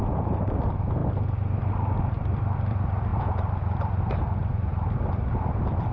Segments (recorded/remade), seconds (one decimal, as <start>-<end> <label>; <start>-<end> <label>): 0.0-5.9 recorded